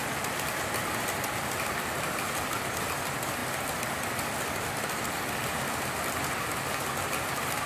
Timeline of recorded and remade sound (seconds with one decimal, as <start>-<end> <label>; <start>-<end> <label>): 0.0-7.7 recorded